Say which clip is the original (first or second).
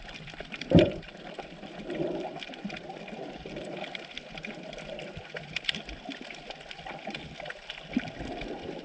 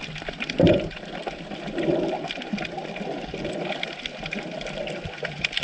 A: second